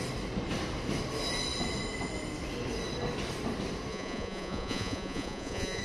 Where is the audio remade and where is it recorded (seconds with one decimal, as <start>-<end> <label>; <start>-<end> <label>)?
0.0-3.9 recorded; 3.9-5.8 remade

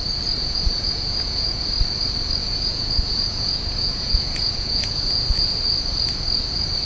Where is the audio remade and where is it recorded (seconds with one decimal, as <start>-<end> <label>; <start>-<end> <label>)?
0.0-0.4 recorded; 0.4-1.6 remade; 1.6-2.4 recorded; 2.4-5.6 remade; 5.6-6.9 recorded

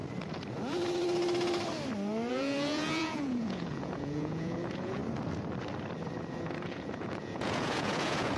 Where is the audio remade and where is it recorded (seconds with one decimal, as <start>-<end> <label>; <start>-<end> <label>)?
0.0-2.3 recorded; 2.3-5.0 remade; 5.0-6.3 recorded; 6.3-8.4 remade

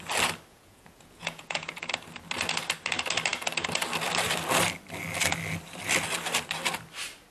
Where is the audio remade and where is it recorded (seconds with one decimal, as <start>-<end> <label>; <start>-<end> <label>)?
0.0-0.5 recorded; 0.5-1.9 remade; 1.9-7.3 recorded

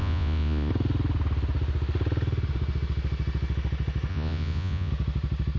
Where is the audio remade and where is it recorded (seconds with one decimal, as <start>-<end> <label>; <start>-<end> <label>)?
0.0-0.7 remade; 0.7-4.1 recorded; 4.1-4.9 remade; 4.9-5.6 recorded